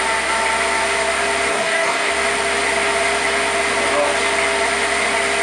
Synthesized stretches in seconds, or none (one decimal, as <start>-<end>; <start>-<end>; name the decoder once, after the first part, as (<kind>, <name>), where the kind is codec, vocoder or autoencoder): 1.5-2.1 (codec, DAC)